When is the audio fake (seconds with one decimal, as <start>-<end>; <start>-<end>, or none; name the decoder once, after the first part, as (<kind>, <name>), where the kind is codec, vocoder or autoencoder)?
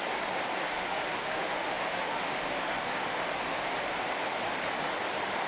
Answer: 0.7-4.0 (autoencoder, DAC-VAE)